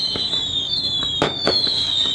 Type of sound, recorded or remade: remade